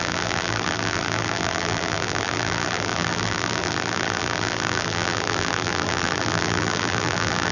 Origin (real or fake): fake